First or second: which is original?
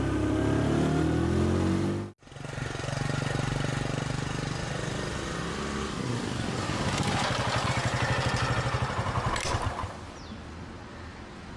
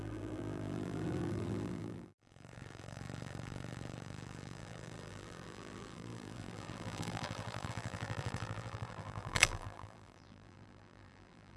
first